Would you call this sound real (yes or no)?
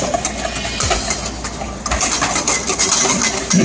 yes